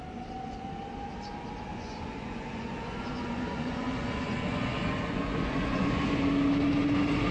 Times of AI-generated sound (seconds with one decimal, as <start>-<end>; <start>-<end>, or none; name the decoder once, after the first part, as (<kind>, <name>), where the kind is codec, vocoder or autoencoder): 1.7-6.1 (vocoder, Vocos)